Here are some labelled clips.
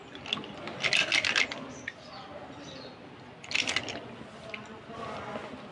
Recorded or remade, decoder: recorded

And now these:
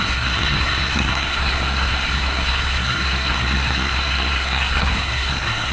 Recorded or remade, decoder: remade, codec, SNAC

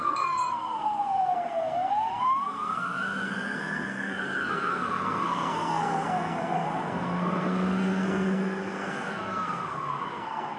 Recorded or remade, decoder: remade, codec, SNAC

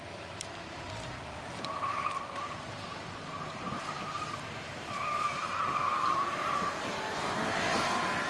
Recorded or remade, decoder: remade, vocoder, BigVGAN v2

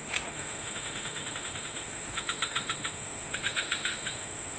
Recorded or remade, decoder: remade, autoencoder, DAC-VAE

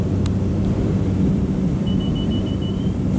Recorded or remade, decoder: remade, vocoder, BigVGAN v2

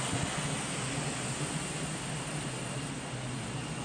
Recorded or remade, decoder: recorded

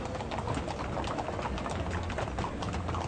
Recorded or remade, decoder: recorded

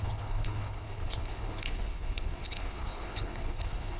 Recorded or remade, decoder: remade, codec, HILCodec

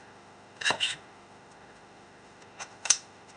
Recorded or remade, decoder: remade, autoencoder, DAC-VAE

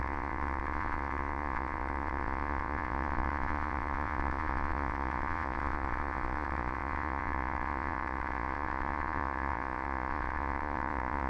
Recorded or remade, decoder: remade, vocoder, Vocos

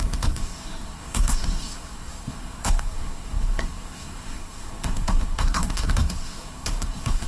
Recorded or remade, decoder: remade, codec, SNAC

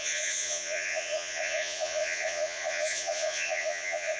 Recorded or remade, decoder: remade, vocoder, Vocos